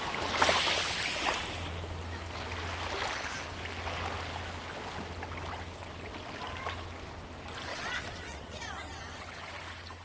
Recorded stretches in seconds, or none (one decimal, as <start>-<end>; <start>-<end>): 0.0-7.7; 9.0-10.0